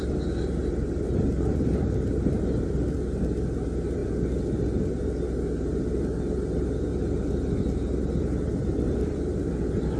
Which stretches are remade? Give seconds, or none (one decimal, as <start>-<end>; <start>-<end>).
0.0-4.0; 8.2-10.0